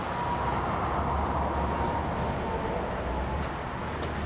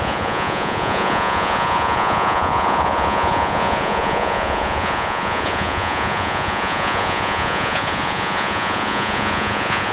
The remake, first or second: second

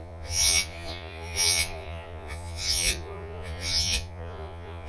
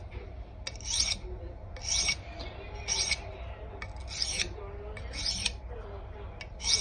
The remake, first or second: first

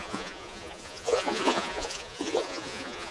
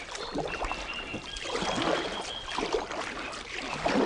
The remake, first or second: first